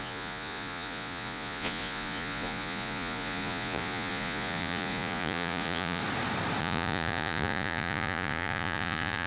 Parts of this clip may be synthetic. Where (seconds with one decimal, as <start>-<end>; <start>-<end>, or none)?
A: 0.0-6.0; 6.6-9.3

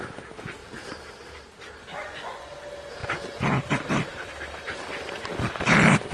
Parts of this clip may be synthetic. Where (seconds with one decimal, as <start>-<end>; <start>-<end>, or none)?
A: 1.9-2.5

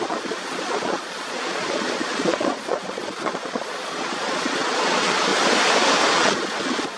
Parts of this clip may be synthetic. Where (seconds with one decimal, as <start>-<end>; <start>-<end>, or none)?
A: 0.0-5.3; 6.1-7.0

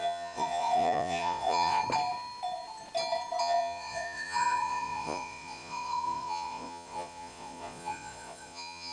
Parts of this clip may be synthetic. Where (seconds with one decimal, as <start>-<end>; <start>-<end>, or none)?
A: 0.0-1.8; 3.4-8.9

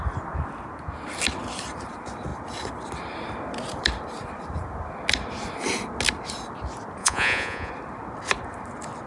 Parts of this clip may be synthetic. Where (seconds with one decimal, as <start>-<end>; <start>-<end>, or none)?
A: 7.0-7.7